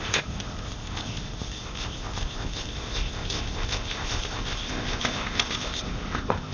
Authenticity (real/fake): fake